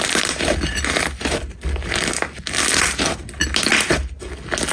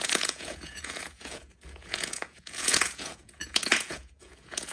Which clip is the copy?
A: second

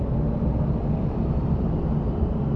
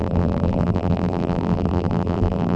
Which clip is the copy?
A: second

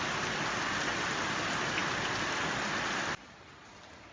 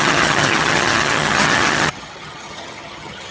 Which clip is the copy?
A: second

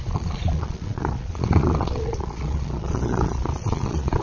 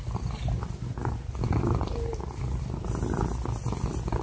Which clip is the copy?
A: first